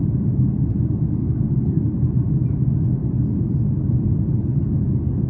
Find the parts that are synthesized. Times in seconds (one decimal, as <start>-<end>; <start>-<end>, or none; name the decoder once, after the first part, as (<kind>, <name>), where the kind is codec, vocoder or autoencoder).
1.2-1.8 (codec, SNAC)